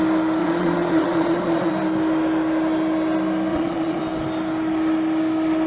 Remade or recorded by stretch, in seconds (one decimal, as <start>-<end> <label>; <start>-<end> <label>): 0.0-0.4 recorded; 0.4-1.7 remade; 1.7-3.5 recorded; 3.5-4.0 remade; 4.0-5.7 recorded